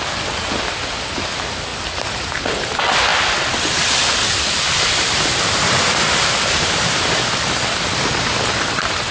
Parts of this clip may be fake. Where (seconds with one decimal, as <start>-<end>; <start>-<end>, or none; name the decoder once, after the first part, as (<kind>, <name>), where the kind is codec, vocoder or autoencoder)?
3.1-7.0 (vocoder, BigVGAN v2)